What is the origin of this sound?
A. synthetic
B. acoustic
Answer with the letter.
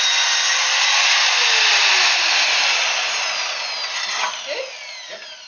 B